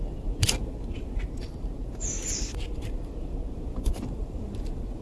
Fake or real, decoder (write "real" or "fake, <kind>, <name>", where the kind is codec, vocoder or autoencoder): fake, vocoder, BigVGAN v2